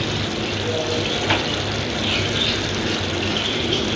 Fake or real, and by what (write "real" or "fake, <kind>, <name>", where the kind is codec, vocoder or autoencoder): real